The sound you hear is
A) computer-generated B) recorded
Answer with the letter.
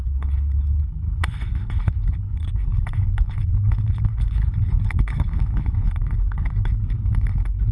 A